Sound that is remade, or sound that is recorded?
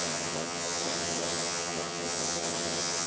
remade